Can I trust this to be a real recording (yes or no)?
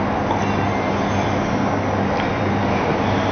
yes